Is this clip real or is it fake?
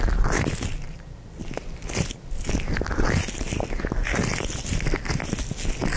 real